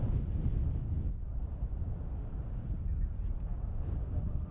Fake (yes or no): no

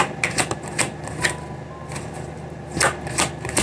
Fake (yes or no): no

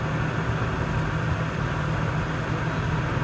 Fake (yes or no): no